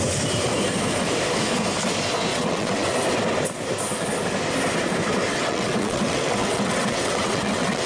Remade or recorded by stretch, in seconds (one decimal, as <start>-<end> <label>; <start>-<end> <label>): 0.0-2.3 recorded; 2.3-2.9 remade; 2.9-5.3 recorded; 5.3-7.9 remade